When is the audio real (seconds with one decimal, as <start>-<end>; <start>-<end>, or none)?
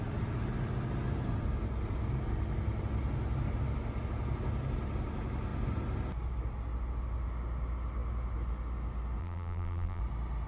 0.0-9.2; 10.0-10.5